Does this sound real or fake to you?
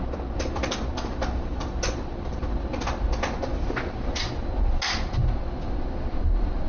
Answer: real